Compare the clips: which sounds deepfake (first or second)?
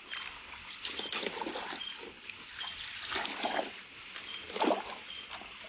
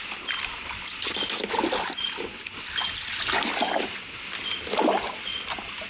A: first